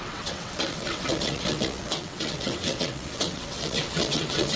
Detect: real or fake fake